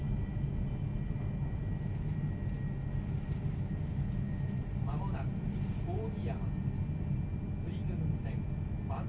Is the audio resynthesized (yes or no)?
no